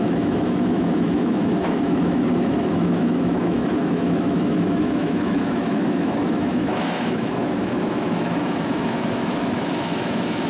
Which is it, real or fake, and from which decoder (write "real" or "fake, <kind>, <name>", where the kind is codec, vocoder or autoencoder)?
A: fake, autoencoder, DAC-VAE